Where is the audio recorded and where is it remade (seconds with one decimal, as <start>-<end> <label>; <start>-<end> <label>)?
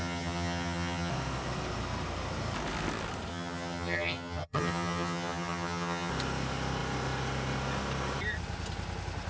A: 0.0-1.1 remade; 1.1-3.3 recorded; 3.3-6.1 remade; 6.1-9.3 recorded